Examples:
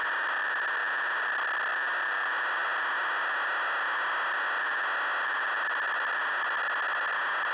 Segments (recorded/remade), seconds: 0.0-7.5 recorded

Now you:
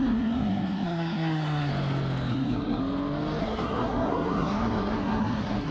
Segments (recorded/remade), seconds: 0.0-1.7 remade; 1.7-2.3 recorded; 2.3-2.8 remade; 2.8-3.4 recorded; 3.4-5.7 remade

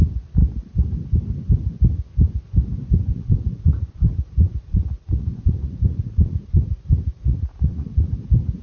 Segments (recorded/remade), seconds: 0.0-3.1 recorded; 3.1-8.0 remade; 8.0-8.6 recorded

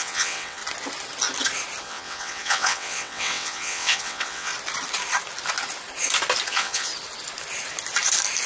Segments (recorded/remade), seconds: 0.0-0.6 remade; 0.6-1.8 recorded; 1.8-4.5 remade; 4.5-6.5 recorded; 6.5-6.9 remade; 6.9-8.5 recorded

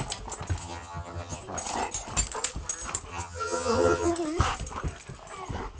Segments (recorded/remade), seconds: 0.0-0.6 recorded; 0.6-1.4 remade; 1.4-3.1 recorded; 3.1-4.1 remade; 4.1-5.8 recorded

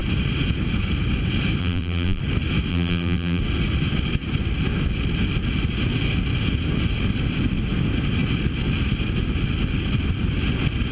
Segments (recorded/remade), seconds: 0.0-1.6 recorded; 1.6-2.2 remade; 2.2-2.7 recorded; 2.7-3.4 remade; 3.4-10.9 recorded